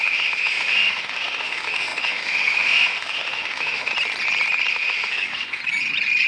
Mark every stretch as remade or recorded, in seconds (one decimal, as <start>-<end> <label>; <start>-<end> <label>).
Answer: 0.0-3.9 remade; 3.9-4.7 recorded; 4.7-5.6 remade; 5.6-6.3 recorded